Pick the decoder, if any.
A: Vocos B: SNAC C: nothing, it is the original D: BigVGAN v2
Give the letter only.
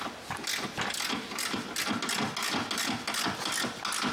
C